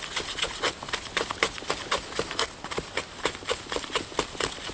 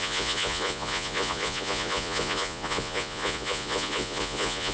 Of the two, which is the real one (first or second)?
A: first